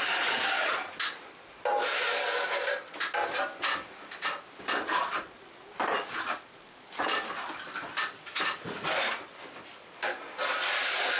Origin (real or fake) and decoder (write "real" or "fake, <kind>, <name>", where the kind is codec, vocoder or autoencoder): real